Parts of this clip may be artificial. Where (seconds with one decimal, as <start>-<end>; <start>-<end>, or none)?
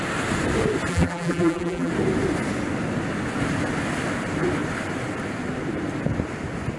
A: 0.9-1.9